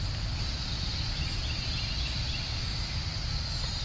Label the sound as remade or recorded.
recorded